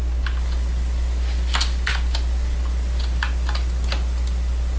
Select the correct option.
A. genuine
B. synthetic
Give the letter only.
A